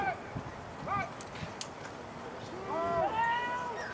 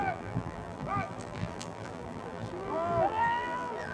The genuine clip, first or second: first